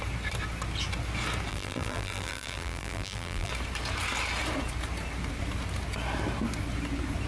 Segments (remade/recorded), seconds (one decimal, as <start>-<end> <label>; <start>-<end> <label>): 0.0-1.5 recorded; 1.5-3.5 remade; 3.5-7.3 recorded